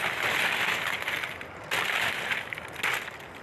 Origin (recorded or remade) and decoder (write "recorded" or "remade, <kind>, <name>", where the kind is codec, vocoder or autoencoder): recorded